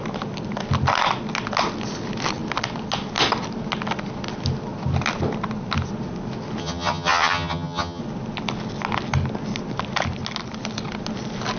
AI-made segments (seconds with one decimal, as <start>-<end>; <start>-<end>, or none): 6.6-8.0